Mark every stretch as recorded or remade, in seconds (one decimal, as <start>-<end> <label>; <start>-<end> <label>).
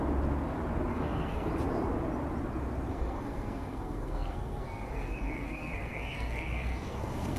0.0-0.9 recorded; 0.9-1.5 remade; 1.5-2.9 recorded; 2.9-7.4 remade